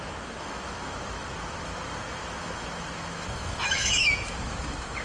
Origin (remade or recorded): remade